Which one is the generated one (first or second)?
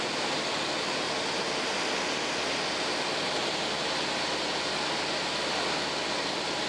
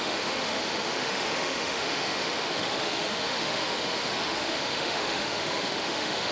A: second